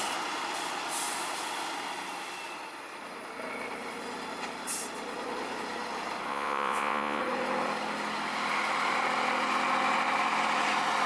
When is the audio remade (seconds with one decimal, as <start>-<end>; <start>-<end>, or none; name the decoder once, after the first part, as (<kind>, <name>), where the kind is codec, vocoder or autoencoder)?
6.3-7.2 (vocoder, Vocos)